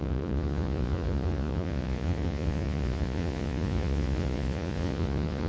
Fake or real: fake